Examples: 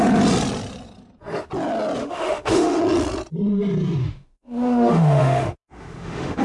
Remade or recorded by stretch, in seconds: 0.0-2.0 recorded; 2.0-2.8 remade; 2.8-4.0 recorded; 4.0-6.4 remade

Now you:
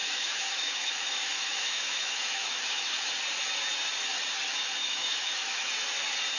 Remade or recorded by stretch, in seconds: 0.0-3.1 remade; 3.1-4.8 recorded; 4.8-5.7 remade; 5.7-6.4 recorded

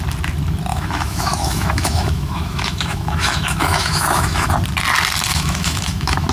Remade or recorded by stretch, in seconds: 0.0-0.7 recorded; 0.7-4.5 remade; 4.5-5.3 recorded; 5.3-6.3 remade

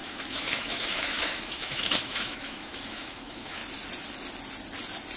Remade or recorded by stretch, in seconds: 0.0-3.6 remade; 3.6-5.2 recorded

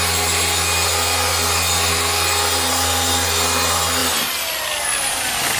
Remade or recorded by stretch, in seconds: 0.0-5.6 recorded